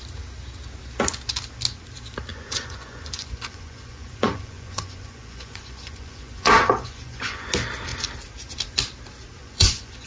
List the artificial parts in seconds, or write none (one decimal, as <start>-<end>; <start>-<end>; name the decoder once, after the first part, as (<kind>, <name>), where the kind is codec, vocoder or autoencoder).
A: 2.3-7.5 (vocoder, Vocos); 9.4-10.1